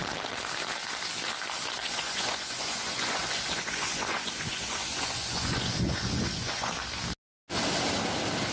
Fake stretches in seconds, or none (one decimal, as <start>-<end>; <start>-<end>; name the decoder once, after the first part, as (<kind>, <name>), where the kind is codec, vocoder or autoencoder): 1.8-6.7 (vocoder, Vocos)